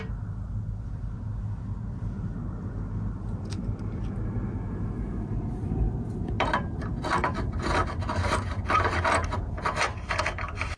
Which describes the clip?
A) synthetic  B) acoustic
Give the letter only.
B